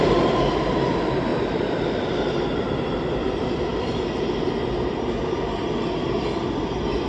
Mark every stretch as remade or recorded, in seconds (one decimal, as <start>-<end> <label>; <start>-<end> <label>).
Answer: 0.0-7.1 recorded